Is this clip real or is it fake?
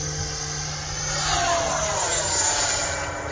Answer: real